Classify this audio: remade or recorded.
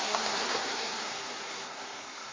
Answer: remade